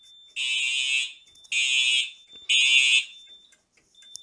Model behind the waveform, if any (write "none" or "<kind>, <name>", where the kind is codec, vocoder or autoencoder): none